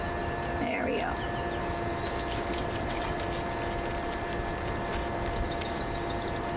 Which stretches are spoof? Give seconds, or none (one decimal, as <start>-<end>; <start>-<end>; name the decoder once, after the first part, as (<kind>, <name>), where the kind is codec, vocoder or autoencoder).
2.6-3.2 (vocoder, WaveNeXt)